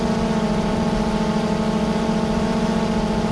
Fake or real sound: fake